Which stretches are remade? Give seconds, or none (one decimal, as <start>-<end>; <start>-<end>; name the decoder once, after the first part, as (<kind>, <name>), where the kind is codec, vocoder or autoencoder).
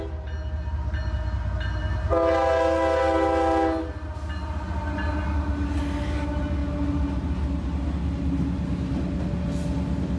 none